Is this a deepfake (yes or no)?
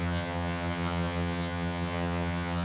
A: yes